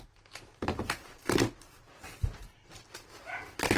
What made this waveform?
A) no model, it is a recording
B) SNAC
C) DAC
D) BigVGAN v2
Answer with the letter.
A